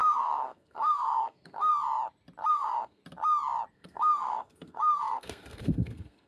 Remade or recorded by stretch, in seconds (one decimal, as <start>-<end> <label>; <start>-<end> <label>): 0.0-1.7 remade; 1.7-2.5 recorded; 2.5-3.0 remade; 3.0-3.7 recorded; 3.7-6.3 remade

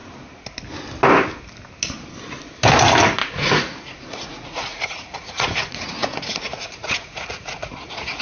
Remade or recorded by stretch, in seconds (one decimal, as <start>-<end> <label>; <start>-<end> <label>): 0.0-3.2 recorded; 3.2-8.2 remade